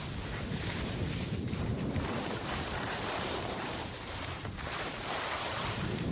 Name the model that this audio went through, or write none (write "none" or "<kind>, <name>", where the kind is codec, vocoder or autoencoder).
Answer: vocoder, BigVGAN v2